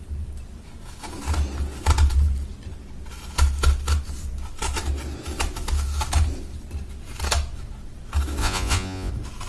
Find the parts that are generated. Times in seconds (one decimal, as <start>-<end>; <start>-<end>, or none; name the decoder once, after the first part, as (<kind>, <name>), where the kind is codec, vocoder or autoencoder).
8.4-9.1 (vocoder, Vocos)